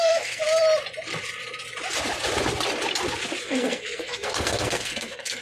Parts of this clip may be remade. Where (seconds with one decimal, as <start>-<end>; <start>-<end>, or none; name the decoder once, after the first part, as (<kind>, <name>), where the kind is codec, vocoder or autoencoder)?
0.0-0.4 (codec, SNAC); 3.4-5.4